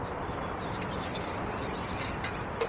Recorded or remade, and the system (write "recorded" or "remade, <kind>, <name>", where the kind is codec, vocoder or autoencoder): remade, vocoder, BigVGAN v2